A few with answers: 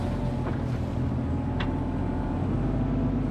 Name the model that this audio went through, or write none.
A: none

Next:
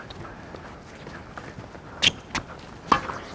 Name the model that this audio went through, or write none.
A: none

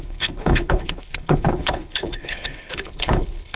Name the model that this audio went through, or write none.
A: codec, HILCodec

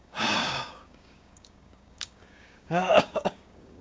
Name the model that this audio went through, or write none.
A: codec, DAC